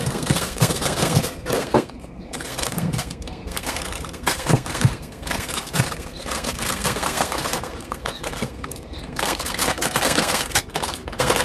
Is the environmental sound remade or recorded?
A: remade